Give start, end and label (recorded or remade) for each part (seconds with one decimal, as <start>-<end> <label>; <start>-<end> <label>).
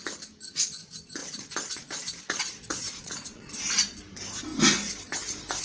0.0-1.2 recorded; 1.2-3.6 remade; 3.6-5.6 recorded